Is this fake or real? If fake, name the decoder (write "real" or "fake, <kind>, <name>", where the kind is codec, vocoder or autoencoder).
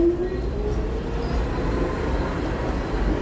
real